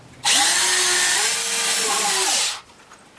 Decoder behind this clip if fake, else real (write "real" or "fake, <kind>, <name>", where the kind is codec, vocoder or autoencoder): real